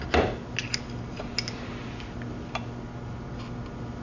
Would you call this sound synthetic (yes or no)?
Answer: no